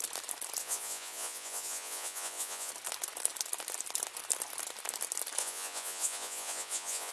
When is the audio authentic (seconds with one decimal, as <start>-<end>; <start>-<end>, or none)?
0.0-0.6; 2.7-5.4